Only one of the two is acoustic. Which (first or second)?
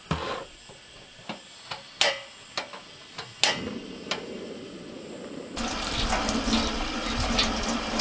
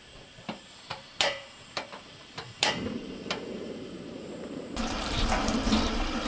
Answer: first